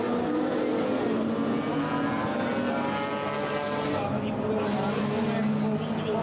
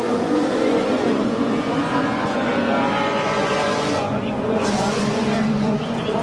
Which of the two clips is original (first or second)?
first